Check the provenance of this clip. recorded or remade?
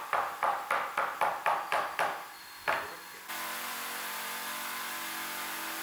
recorded